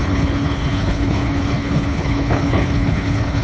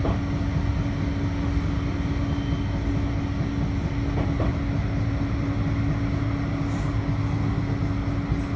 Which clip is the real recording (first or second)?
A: second